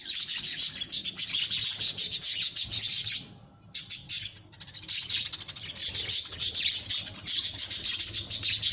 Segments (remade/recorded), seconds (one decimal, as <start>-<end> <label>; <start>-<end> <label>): 0.0-8.7 recorded